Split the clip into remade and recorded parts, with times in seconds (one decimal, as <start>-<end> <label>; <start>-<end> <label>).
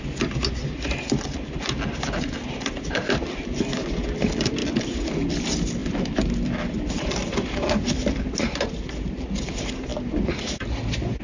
0.0-4.6 recorded; 4.6-5.3 remade; 5.3-5.8 recorded; 5.8-8.3 remade; 8.3-11.2 recorded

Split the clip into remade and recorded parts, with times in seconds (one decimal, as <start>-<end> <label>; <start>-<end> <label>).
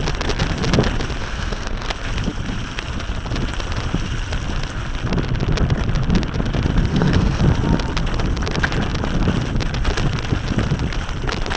0.0-1.2 recorded; 1.2-1.9 remade; 1.9-6.9 recorded; 6.9-7.4 remade; 7.4-11.6 recorded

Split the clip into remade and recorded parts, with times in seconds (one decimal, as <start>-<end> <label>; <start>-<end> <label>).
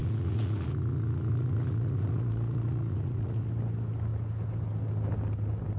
0.0-3.5 remade; 3.5-5.8 recorded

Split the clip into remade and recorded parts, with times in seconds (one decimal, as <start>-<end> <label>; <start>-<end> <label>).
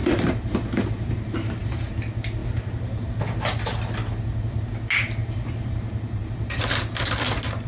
0.0-1.9 remade; 1.9-2.4 recorded; 2.4-3.1 remade; 3.1-5.2 recorded; 5.2-6.6 remade; 6.6-7.7 recorded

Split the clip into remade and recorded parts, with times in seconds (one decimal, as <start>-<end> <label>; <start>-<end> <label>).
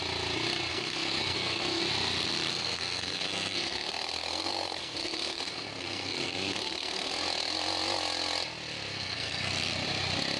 0.0-0.7 recorded; 0.7-1.8 remade; 1.8-2.5 recorded; 2.5-7.1 remade; 7.1-8.9 recorded; 8.9-9.5 remade; 9.5-10.4 recorded